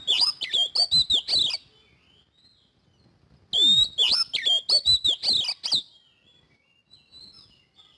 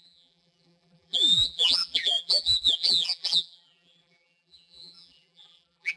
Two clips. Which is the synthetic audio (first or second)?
second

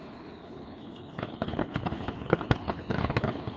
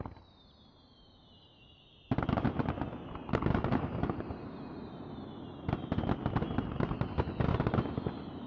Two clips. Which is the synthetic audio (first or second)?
first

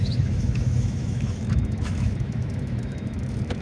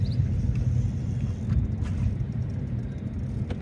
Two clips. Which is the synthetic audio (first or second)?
first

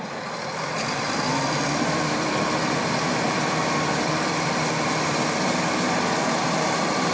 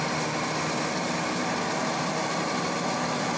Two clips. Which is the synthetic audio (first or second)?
first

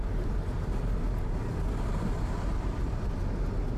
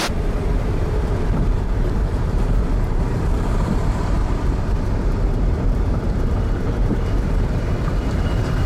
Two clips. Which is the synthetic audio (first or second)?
second